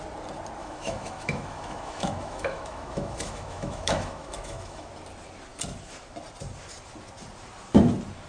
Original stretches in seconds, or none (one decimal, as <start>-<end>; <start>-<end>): 0.0-0.6; 4.9-8.3